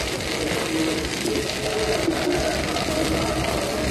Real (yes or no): yes